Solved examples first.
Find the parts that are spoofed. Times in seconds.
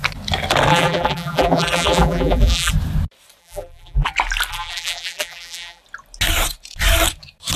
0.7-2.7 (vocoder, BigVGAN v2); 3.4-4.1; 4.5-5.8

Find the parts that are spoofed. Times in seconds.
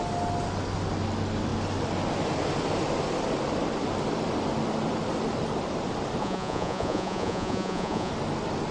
6.2-8.1 (vocoder, Vocos)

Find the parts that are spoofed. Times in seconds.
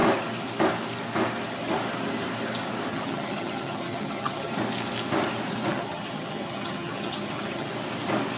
2.9-4.5 (vocoder, HiFi-GAN); 5.7-7.7